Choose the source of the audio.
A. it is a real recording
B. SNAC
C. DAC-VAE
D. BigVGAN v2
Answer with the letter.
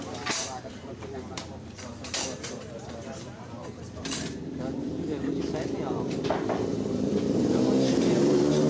D